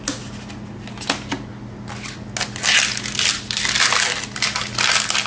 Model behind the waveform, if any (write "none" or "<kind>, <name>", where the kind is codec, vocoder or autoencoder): none